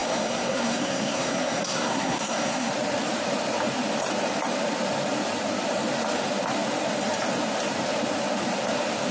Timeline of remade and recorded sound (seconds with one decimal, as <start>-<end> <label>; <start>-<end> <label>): 0.0-2.7 remade; 2.7-9.1 recorded